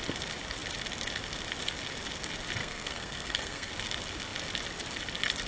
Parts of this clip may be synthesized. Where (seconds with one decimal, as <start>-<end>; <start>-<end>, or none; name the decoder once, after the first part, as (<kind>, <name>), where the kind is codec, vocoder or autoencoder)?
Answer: 2.6-3.7 (codec, SNAC)